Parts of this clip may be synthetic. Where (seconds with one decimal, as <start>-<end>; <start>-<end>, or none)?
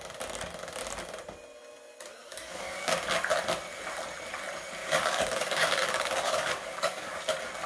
2.2-2.9; 4.8-7.2